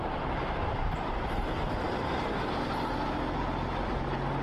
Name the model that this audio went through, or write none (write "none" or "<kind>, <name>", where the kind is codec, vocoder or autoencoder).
none